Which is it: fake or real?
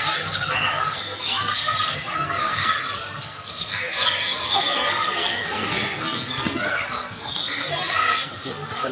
fake